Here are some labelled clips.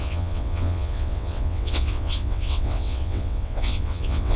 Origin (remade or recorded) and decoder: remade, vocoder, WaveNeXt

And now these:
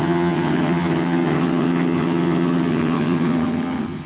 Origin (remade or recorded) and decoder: remade, vocoder, HiFi-GAN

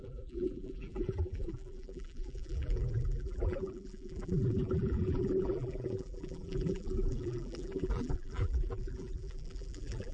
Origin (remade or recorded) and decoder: remade, vocoder, BigVGAN v2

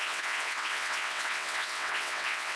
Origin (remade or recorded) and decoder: remade, vocoder, WaveNeXt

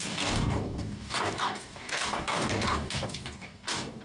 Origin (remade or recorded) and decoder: remade, codec, DAC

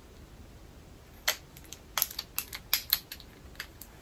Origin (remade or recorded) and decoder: recorded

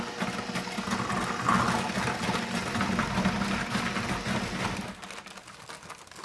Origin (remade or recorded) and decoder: recorded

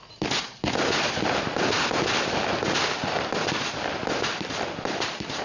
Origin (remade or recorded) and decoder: recorded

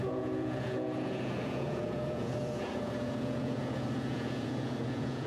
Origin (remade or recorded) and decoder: remade, vocoder, Vocos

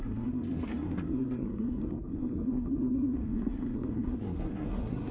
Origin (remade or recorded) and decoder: remade, codec, SNAC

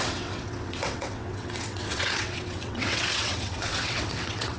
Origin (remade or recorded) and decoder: remade, vocoder, WaveNeXt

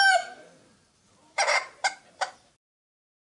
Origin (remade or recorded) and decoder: remade, vocoder, BigVGAN v2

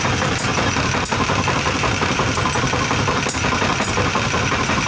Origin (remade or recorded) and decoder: recorded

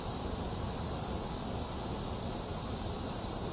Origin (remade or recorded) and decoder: recorded